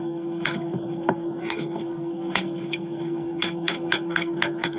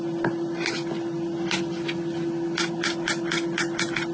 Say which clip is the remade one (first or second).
first